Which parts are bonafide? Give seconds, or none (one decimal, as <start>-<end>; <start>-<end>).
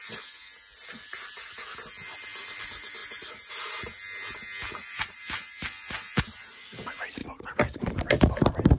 0.0-4.8; 6.6-7.2; 8.4-8.8